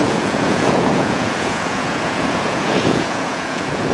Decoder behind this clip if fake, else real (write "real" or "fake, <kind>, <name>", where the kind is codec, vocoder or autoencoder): fake, vocoder, Vocos